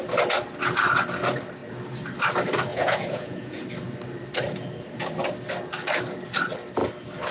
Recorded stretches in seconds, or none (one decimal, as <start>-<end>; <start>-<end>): 0.0-2.7; 3.6-7.3